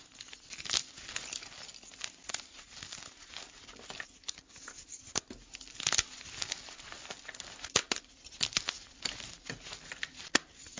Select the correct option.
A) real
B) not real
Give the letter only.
A